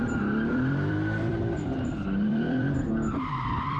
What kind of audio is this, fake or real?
fake